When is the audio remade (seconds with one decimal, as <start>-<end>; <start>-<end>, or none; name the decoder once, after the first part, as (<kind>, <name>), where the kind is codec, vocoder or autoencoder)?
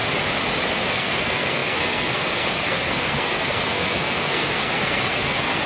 0.9-5.7 (codec, SNAC)